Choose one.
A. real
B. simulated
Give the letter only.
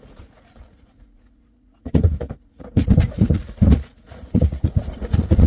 B